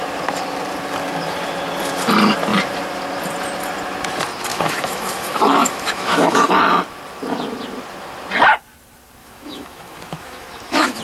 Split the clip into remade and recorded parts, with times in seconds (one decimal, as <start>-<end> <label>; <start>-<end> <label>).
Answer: 0.0-4.5 recorded; 4.5-6.5 remade; 6.5-9.2 recorded; 9.2-11.0 remade